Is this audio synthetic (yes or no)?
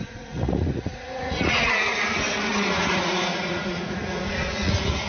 yes